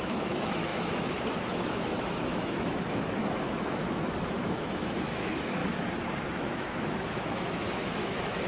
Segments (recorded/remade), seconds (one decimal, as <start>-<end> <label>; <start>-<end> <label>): 0.0-5.6 remade; 5.6-6.3 recorded; 6.3-8.5 remade